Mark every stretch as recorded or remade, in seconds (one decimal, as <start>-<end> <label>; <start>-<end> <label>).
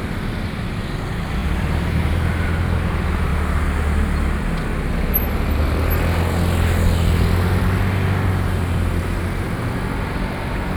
0.0-1.4 recorded; 1.4-2.1 remade; 2.1-10.8 recorded